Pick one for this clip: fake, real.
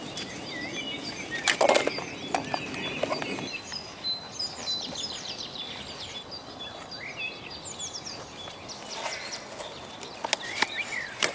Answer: real